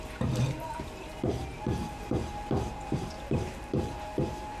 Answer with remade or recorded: remade